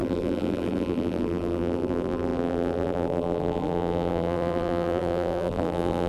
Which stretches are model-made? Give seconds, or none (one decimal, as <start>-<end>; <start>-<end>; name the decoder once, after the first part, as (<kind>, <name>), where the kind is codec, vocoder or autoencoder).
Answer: 0.0-6.1 (vocoder, BigVGAN v2)